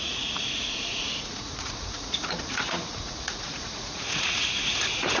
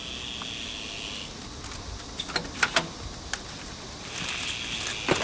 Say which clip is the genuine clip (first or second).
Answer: second